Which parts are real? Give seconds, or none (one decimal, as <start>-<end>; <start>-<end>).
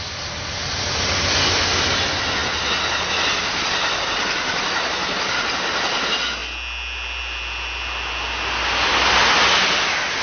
0.0-10.2